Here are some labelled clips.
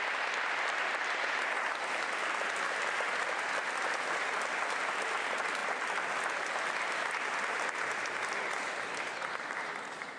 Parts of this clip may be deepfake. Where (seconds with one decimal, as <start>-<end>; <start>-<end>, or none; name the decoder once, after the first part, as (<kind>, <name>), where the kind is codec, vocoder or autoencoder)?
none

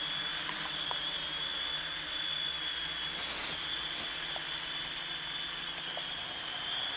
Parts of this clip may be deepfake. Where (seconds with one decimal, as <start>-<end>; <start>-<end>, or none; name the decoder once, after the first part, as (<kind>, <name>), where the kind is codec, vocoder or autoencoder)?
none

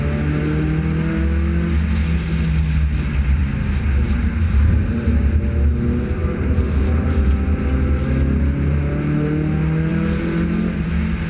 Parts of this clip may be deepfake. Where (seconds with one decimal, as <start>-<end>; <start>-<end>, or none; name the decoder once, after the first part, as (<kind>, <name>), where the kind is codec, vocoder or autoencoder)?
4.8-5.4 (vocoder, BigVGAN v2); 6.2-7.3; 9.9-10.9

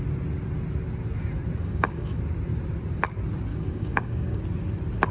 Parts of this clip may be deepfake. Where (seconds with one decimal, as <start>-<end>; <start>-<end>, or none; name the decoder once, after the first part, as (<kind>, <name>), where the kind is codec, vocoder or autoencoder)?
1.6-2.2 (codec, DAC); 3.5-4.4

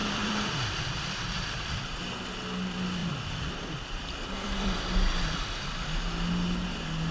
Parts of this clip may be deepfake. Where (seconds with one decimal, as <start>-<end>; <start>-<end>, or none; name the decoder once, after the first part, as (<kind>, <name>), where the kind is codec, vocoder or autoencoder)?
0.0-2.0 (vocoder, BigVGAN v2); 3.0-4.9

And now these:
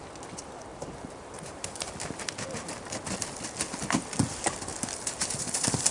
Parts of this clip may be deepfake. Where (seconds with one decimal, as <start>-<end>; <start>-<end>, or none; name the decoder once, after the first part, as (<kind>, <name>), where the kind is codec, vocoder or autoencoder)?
0.7-2.0 (vocoder, BigVGAN v2)

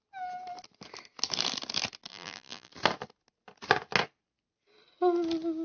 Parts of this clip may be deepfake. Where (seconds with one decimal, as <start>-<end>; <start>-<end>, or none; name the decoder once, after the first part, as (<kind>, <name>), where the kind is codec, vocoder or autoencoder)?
2.1-2.7 (vocoder, BigVGAN v2)

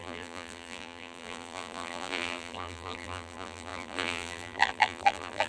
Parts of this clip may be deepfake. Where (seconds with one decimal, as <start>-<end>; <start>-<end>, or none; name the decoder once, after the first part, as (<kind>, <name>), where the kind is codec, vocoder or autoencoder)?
0.0-5.5 (vocoder, BigVGAN v2)